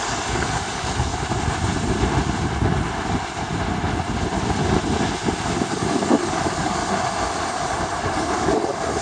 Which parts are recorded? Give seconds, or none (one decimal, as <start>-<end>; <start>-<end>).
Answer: 1.1-5.7; 6.8-8.0